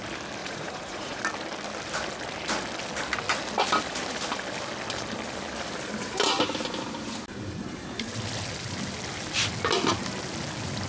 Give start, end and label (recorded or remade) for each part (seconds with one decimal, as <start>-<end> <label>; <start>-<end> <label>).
0.0-0.4 recorded; 0.4-1.2 remade; 1.2-10.9 recorded